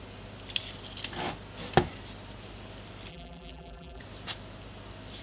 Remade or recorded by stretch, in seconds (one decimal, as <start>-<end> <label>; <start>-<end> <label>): 0.0-3.1 recorded; 3.1-4.0 remade; 4.0-5.2 recorded